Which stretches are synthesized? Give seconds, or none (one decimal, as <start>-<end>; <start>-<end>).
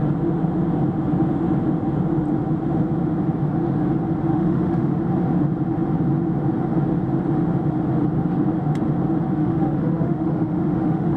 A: 4.3-5.0; 9.4-11.2